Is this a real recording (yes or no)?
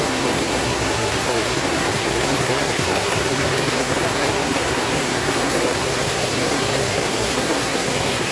no